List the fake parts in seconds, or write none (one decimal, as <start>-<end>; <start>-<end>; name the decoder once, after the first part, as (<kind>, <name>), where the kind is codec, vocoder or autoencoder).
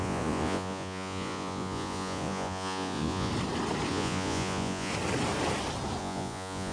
0.0-3.3 (vocoder, Vocos); 3.9-4.9; 6.0-6.7